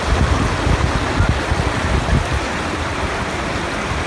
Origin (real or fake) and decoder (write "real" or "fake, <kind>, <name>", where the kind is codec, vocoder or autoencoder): real